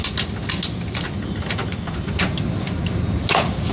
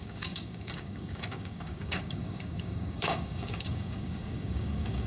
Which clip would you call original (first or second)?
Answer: first